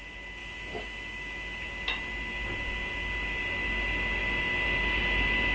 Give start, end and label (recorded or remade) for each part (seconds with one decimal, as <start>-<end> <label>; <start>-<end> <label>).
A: 0.0-5.5 recorded